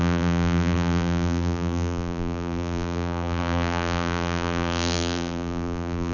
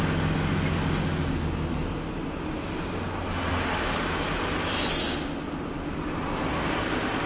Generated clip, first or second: first